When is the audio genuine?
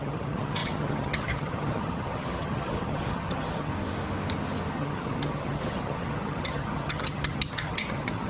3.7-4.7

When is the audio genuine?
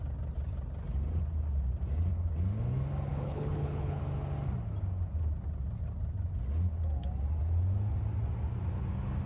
0.0-3.1; 4.0-9.3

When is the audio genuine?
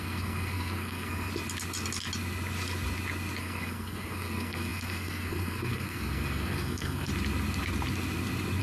1.3-3.4; 7.1-8.6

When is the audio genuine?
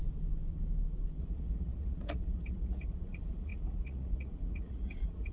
0.0-1.2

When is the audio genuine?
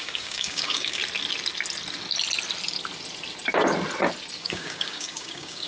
1.0-4.4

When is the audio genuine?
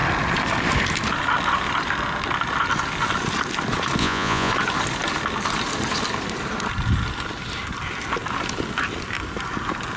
0.0-4.0; 4.5-10.0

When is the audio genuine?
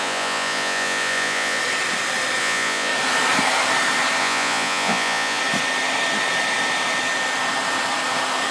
1.6-2.4; 2.9-4.2; 5.4-8.5